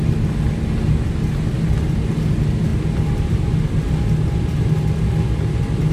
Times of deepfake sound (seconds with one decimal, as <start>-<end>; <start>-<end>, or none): none